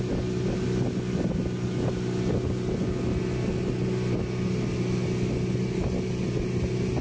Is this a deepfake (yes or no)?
no